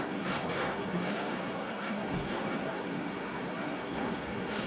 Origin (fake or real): fake